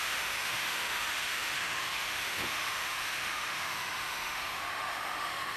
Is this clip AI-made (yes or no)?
yes